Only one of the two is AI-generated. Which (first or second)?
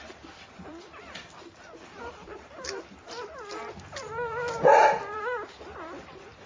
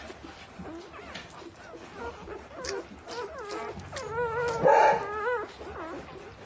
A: first